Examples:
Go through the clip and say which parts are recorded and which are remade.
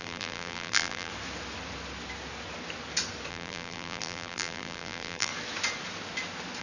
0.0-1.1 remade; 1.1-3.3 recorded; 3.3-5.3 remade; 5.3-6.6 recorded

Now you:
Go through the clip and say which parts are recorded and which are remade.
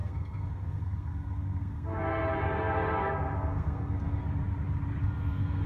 0.0-2.2 remade; 2.2-3.0 recorded; 3.0-4.2 remade; 4.2-5.0 recorded; 5.0-5.7 remade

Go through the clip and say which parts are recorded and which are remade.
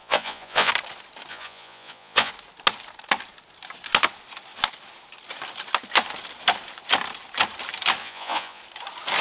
0.0-0.7 remade; 0.7-1.3 recorded; 1.3-2.3 remade; 2.3-8.0 recorded; 8.0-8.6 remade; 8.6-9.2 recorded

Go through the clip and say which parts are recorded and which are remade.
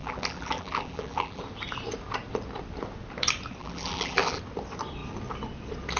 0.0-1.4 remade; 1.4-3.6 recorded; 3.6-4.4 remade; 4.4-6.0 recorded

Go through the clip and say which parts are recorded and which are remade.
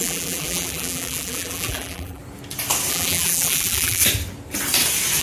0.0-2.2 remade; 2.2-2.9 recorded; 2.9-4.0 remade; 4.0-5.2 recorded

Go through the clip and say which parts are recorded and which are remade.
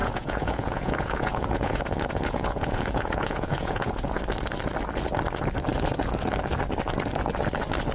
0.0-4.2 remade; 4.2-7.9 recorded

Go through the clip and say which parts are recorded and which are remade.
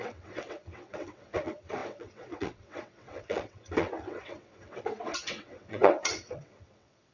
0.0-7.1 remade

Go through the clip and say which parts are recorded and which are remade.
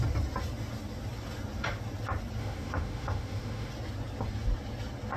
0.0-2.4 recorded; 2.4-3.7 remade; 3.7-5.2 recorded